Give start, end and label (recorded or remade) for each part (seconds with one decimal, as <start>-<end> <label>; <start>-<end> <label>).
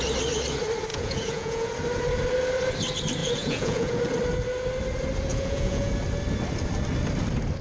0.0-0.9 recorded; 0.9-1.7 remade; 1.7-3.2 recorded; 3.2-4.0 remade; 4.0-5.3 recorded; 5.3-5.9 remade; 5.9-7.6 recorded